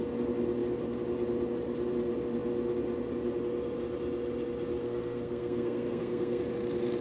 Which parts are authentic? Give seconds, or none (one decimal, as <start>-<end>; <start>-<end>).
0.0-4.8; 6.4-7.0